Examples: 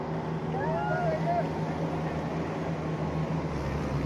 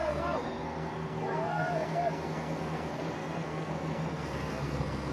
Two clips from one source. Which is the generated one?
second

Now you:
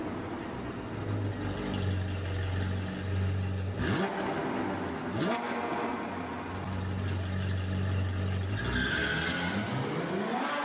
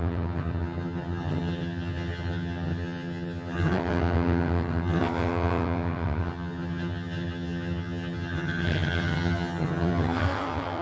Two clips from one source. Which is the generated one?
second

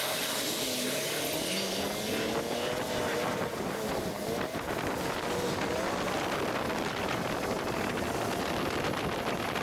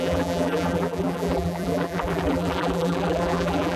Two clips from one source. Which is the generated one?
second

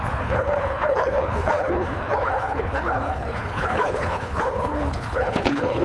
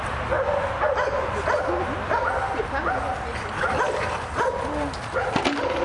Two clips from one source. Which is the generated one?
first